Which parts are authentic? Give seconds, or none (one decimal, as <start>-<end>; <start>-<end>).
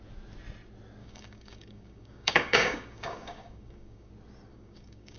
0.0-1.0; 4.1-4.5